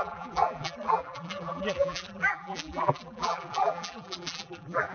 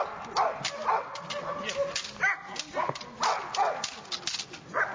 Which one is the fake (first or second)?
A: first